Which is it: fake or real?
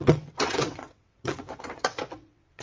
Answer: fake